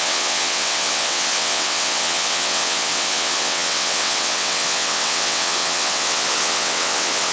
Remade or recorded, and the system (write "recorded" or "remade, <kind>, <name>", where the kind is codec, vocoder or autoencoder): remade, vocoder, WaveNeXt